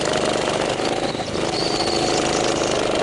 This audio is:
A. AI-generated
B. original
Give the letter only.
B